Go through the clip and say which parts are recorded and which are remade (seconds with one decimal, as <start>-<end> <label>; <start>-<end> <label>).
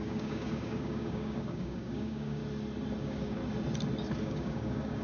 0.0-2.4 remade; 2.4-3.0 recorded; 3.0-3.4 remade; 3.4-4.2 recorded; 4.2-5.0 remade